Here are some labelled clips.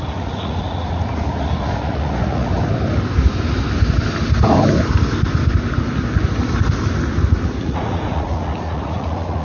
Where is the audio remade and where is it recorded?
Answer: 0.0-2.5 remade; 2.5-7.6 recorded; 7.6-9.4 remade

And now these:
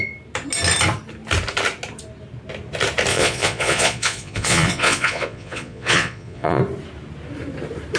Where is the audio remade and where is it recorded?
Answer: 0.0-3.1 recorded; 3.1-6.6 remade; 6.6-8.0 recorded

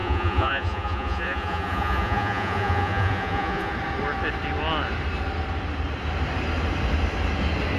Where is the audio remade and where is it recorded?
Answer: 0.0-3.7 remade; 3.7-7.8 recorded

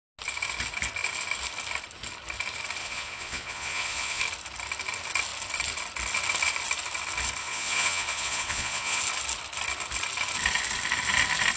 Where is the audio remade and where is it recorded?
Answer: 0.0-2.8 recorded; 2.8-4.2 remade; 4.2-7.4 recorded; 7.4-9.0 remade; 9.0-11.6 recorded

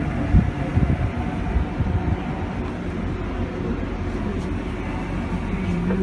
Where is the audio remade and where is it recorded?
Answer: 0.0-6.0 recorded

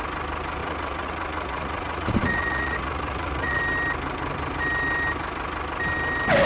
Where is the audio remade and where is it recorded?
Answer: 0.0-0.6 recorded; 0.6-3.6 remade; 3.6-6.5 recorded

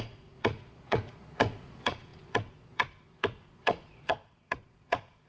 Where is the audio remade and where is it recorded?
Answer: 0.0-5.3 remade